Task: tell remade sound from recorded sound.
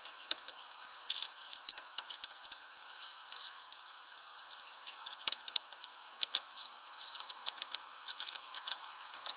remade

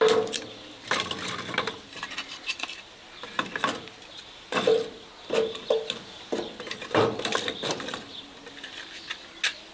recorded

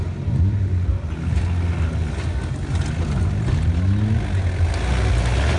recorded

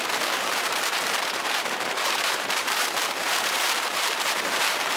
remade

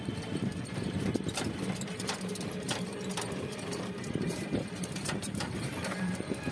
remade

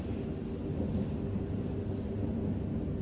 recorded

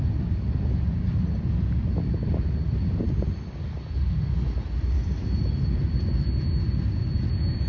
recorded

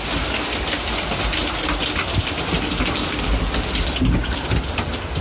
recorded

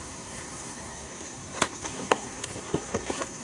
remade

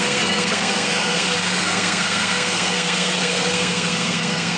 remade